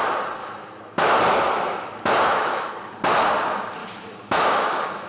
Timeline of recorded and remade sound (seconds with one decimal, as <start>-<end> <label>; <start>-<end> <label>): 0.0-0.4 recorded; 0.4-1.2 remade; 1.2-1.7 recorded; 1.7-2.7 remade; 2.7-3.8 recorded; 3.8-5.1 remade